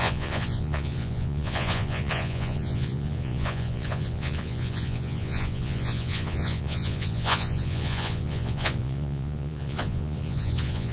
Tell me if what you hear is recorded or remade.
remade